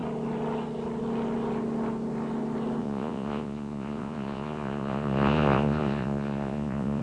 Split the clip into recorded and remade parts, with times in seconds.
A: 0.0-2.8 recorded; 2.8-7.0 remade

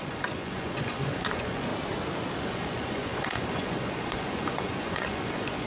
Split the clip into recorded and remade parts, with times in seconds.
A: 0.0-1.7 remade; 1.7-2.4 recorded; 2.4-5.7 remade

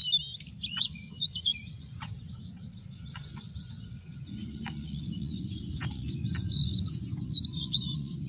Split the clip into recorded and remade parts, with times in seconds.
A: 0.0-0.7 recorded; 0.7-8.3 remade

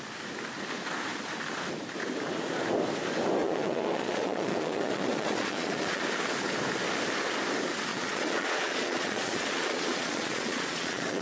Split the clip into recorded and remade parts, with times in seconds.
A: 0.0-3.4 recorded; 3.4-6.0 remade; 6.0-7.9 recorded; 7.9-11.2 remade

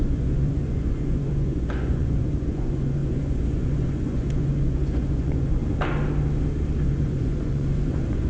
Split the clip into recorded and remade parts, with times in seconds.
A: 0.0-5.6 remade; 5.6-6.8 recorded; 6.8-8.3 remade

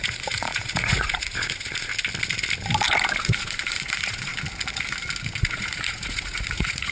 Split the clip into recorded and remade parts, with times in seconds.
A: 0.0-1.9 remade; 1.9-3.2 recorded; 3.2-4.3 remade; 4.3-5.4 recorded; 5.4-6.9 remade

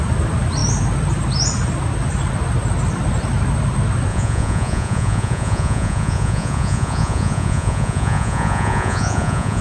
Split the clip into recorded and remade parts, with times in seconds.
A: 0.0-4.1 recorded; 4.1-9.6 remade

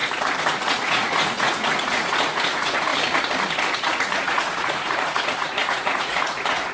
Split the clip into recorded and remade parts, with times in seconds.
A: 0.0-0.5 recorded; 0.5-2.9 remade; 2.9-3.7 recorded; 3.7-6.7 remade